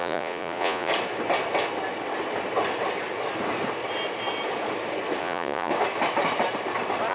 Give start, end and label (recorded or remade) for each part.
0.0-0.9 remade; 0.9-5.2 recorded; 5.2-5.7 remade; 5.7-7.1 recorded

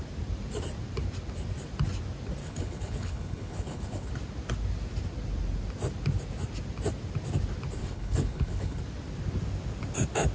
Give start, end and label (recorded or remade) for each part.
0.0-2.4 recorded; 2.4-4.1 remade; 4.1-7.8 recorded; 7.8-8.8 remade; 8.8-10.3 recorded

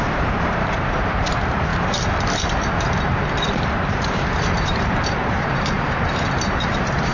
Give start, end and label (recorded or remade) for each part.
0.0-7.1 remade

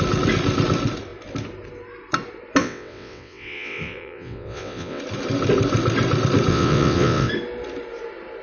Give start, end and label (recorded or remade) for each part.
0.0-2.6 recorded; 2.6-5.0 remade; 5.0-6.5 recorded; 6.5-7.3 remade; 7.3-8.4 recorded